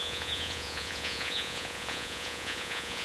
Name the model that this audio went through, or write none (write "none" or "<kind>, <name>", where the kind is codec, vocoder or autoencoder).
vocoder, Vocos